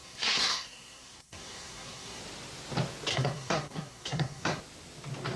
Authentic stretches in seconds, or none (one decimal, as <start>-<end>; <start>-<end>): 2.2-3.1; 4.6-5.4